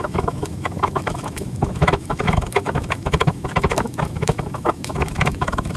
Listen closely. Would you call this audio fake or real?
fake